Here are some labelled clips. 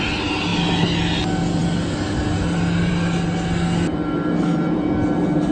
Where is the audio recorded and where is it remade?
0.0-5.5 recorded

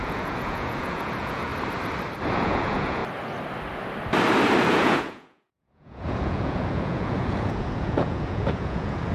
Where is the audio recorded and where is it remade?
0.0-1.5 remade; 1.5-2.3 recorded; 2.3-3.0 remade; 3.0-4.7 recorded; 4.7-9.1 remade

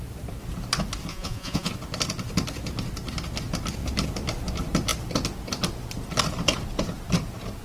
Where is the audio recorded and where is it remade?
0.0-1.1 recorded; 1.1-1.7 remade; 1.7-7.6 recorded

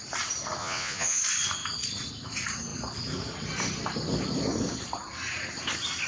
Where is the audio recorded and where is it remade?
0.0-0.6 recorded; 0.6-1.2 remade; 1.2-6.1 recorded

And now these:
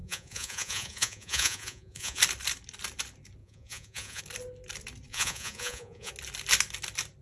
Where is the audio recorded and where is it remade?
0.0-2.2 remade; 2.2-3.4 recorded; 3.4-4.2 remade; 4.2-5.1 recorded; 5.1-6.1 remade; 6.1-7.2 recorded

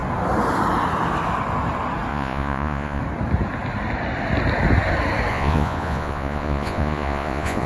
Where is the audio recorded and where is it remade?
0.0-2.1 recorded; 2.1-3.0 remade; 3.0-5.3 recorded; 5.3-7.7 remade

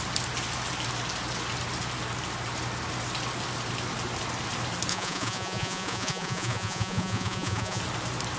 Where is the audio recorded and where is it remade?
0.0-4.9 recorded; 4.9-7.8 remade; 7.8-8.4 recorded

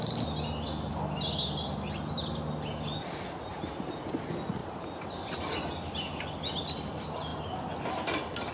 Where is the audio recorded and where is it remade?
0.0-8.5 recorded